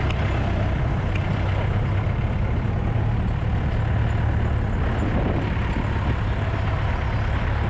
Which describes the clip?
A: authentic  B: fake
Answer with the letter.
A